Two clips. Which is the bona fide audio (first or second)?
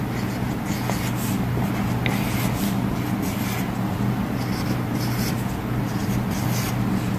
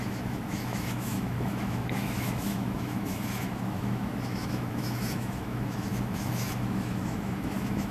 first